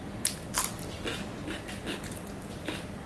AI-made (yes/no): no